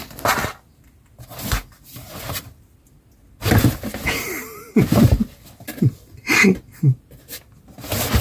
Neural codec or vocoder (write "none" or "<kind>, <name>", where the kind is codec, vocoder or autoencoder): none